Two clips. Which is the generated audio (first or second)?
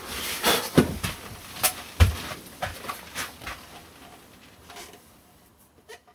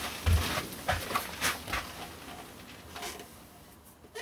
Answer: first